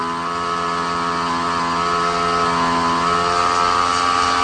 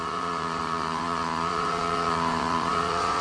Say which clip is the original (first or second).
first